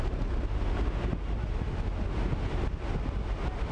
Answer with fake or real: real